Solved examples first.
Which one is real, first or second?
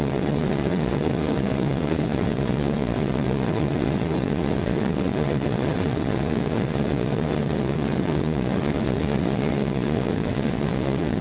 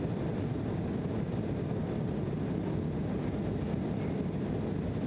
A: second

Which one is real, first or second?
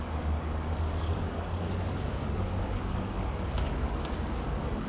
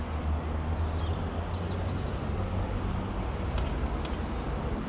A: second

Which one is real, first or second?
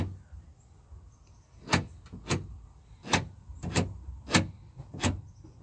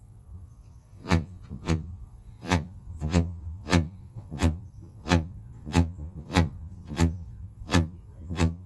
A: first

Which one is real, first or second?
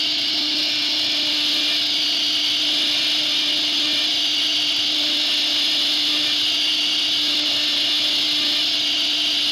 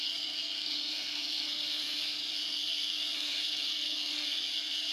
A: first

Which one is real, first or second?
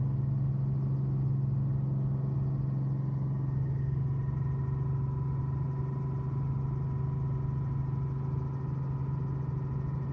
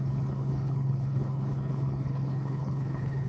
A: first